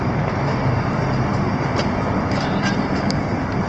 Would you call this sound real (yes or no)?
no